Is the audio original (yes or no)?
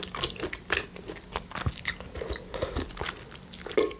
yes